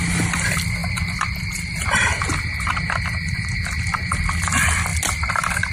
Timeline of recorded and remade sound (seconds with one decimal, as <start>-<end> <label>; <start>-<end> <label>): 0.0-0.8 recorded; 0.8-4.2 remade; 4.2-5.7 recorded